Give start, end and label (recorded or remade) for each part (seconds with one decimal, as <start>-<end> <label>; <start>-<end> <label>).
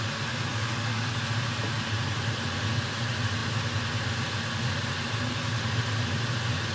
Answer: 0.0-0.5 recorded; 0.5-1.2 remade; 1.2-6.7 recorded